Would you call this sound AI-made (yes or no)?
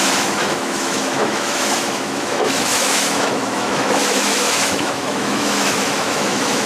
yes